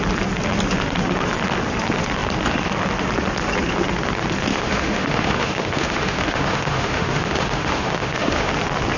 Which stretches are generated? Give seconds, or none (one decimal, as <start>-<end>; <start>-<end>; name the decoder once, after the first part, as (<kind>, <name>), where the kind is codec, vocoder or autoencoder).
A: 4.5-8.5 (autoencoder, DAC-VAE)